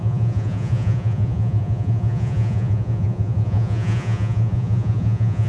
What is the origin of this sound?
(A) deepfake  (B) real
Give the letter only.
A